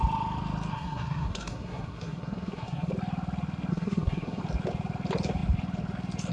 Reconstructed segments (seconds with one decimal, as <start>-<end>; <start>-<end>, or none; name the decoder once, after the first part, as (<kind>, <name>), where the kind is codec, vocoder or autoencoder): 0.7-2.9 (codec, SNAC); 3.7-4.4